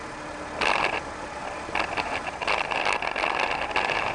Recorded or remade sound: recorded